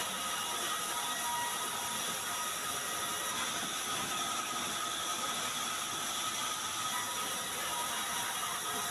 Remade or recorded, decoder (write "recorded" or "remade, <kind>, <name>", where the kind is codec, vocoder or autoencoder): recorded